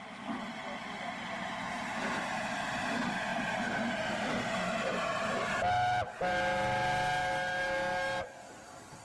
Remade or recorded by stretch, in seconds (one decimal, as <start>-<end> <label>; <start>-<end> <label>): 0.0-9.0 recorded